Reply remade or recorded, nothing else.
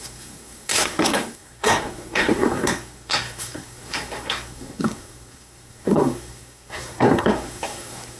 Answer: remade